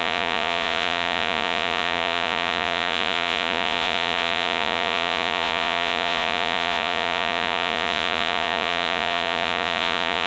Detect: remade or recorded remade